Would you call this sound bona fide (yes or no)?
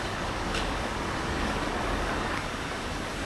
no